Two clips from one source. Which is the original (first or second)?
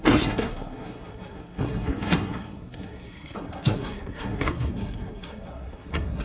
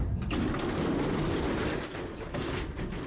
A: second